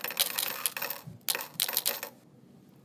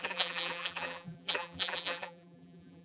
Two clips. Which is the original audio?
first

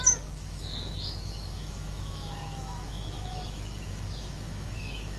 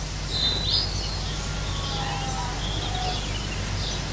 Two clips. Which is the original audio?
second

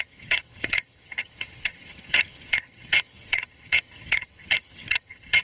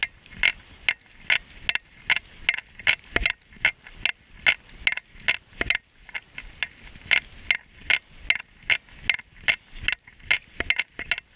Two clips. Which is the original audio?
second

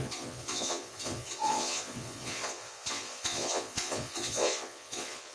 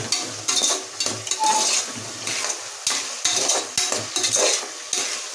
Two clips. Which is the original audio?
second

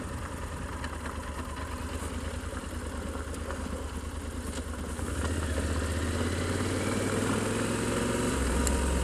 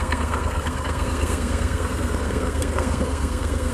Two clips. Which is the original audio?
first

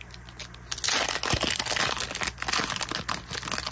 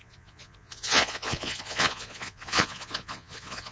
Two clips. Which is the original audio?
first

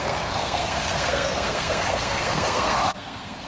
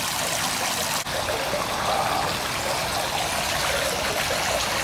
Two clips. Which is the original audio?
second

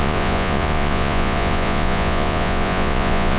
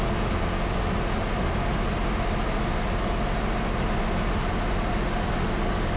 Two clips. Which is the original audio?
second